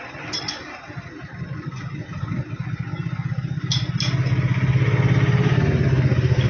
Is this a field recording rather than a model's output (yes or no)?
yes